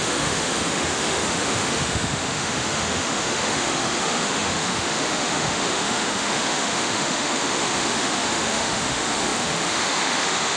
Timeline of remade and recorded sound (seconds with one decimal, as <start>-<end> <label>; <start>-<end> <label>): 0.0-10.6 remade